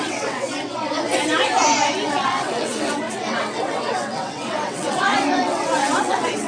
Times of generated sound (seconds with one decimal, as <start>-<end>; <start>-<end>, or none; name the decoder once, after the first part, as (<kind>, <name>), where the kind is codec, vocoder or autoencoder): 0.0-1.1 (vocoder, WaveNeXt); 2.0-6.5